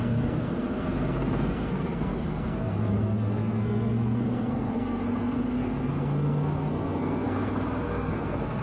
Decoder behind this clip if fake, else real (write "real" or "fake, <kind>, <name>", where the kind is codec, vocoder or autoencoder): fake, codec, SNAC